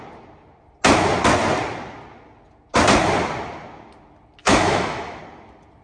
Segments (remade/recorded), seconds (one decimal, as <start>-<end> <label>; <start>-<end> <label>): 0.0-4.4 recorded; 4.4-5.2 remade; 5.2-5.8 recorded